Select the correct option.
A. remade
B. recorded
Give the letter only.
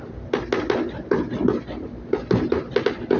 B